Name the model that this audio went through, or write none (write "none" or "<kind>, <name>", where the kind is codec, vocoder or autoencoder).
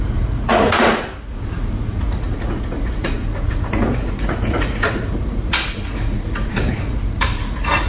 vocoder, Vocos